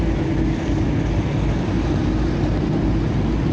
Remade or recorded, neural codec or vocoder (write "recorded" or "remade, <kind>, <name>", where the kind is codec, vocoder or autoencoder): recorded